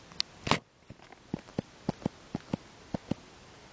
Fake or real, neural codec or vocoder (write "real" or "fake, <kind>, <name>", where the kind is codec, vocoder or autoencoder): real